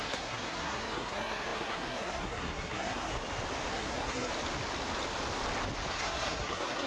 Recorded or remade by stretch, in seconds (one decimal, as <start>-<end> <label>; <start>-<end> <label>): 0.0-3.1 remade; 3.1-3.7 recorded; 3.7-4.3 remade; 4.3-5.9 recorded; 5.9-6.9 remade